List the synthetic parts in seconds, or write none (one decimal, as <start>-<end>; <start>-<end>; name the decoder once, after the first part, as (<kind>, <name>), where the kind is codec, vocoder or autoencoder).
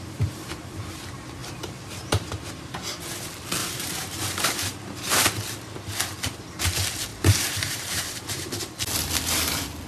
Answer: 1.4-2.3 (vocoder, BigVGAN v2); 3.6-5.1; 7.1-8.5